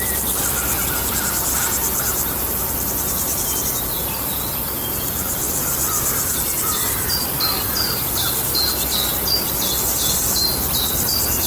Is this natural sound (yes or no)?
yes